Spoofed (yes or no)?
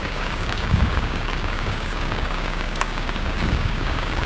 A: yes